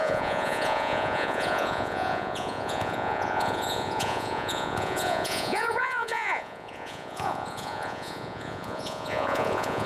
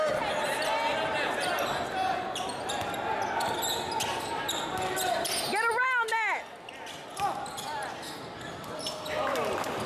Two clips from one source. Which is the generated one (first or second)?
first